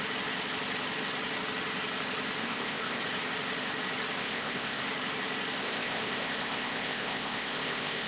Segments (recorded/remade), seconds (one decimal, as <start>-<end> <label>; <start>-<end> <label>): 0.0-2.4 recorded; 2.4-3.0 remade; 3.0-4.2 recorded; 4.2-4.8 remade; 4.8-5.6 recorded; 5.6-8.1 remade